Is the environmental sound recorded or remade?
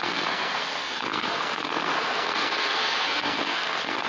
remade